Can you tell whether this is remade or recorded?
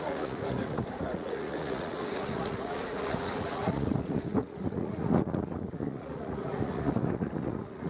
remade